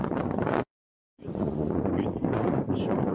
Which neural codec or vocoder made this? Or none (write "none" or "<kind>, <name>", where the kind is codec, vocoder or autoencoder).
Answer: vocoder, Vocos